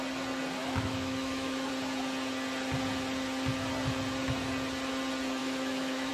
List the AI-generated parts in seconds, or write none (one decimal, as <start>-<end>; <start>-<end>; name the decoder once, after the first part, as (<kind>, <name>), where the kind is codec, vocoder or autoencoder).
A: 0.6-1.7 (autoencoder, DAC-VAE); 5.4-6.1